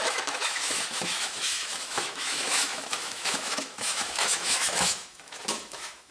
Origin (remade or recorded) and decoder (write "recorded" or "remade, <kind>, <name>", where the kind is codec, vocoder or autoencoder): remade, autoencoder, DAC-VAE